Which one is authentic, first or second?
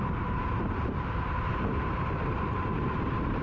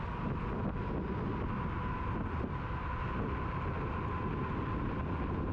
second